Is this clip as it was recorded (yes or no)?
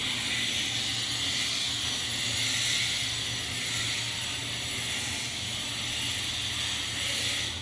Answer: yes